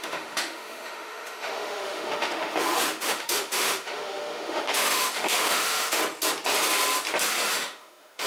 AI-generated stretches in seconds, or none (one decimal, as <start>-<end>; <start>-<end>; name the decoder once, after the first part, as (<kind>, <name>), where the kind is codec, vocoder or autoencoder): 0.0-6.0 (autoencoder, DAC-VAE); 7.5-8.3